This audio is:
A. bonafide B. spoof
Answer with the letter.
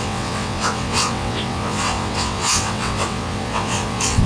B